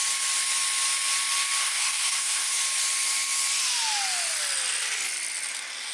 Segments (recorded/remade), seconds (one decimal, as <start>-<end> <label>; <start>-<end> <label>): 0.0-1.6 recorded; 1.6-2.6 remade; 2.6-5.9 recorded